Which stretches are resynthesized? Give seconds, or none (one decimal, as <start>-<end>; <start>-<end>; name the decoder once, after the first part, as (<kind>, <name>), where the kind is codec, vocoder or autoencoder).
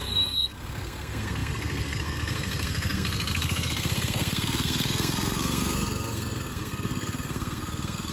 0.0-8.1 (codec, SNAC)